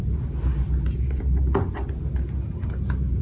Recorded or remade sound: recorded